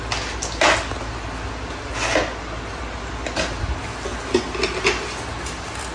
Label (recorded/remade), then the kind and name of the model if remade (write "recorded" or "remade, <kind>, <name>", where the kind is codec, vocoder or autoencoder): recorded